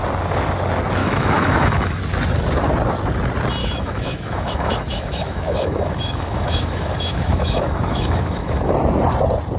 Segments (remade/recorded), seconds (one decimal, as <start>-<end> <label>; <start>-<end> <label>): 0.0-1.0 recorded; 1.0-2.0 remade; 2.0-3.6 recorded; 3.6-8.7 remade; 8.7-9.6 recorded